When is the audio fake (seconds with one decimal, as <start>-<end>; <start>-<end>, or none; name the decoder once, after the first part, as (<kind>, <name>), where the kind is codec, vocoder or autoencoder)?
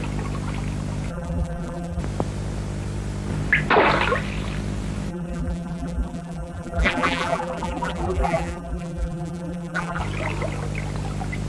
1.1-2.0 (vocoder, BigVGAN v2); 5.1-10.0